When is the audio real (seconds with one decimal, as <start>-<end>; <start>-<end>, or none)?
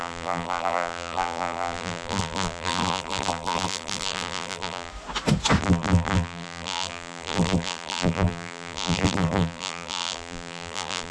4.9-5.6